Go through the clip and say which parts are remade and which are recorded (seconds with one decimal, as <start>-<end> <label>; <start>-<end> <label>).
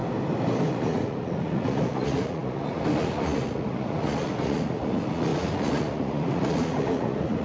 0.0-0.7 recorded; 0.7-7.4 remade